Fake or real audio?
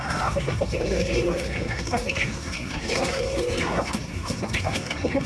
fake